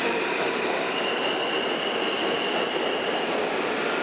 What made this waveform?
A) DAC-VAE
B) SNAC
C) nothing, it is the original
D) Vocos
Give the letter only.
C